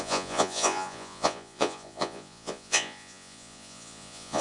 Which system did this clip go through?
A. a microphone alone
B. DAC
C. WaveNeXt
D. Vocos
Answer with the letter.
D